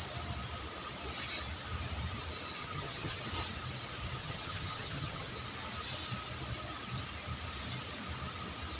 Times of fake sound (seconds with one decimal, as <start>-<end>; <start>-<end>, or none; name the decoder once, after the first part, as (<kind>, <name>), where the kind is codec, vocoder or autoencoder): 2.6-3.2 (vocoder, HiFi-GAN); 4.2-5.3